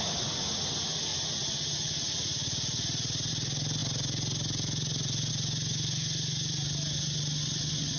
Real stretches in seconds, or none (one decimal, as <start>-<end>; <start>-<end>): 0.0-8.0